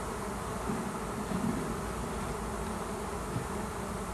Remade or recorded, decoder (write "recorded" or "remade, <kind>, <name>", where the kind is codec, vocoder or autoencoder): recorded